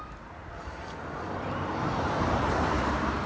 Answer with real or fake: fake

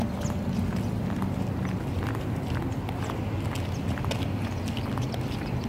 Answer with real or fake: real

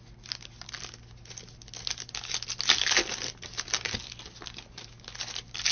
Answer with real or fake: real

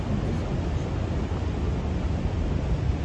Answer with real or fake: real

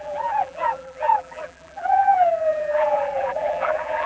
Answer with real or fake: fake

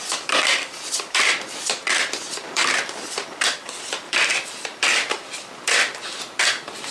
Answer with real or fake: fake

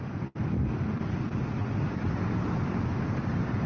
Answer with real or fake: real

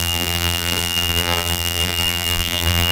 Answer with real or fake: fake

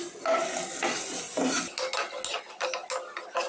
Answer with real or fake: real